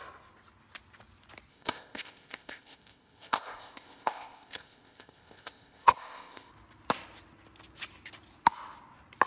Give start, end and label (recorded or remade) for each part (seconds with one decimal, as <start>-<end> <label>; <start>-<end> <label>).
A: 0.0-1.5 recorded; 1.5-6.5 remade; 6.5-9.3 recorded